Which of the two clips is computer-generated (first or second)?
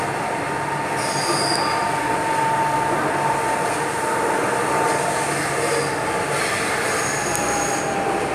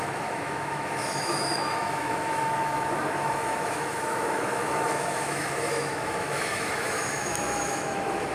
second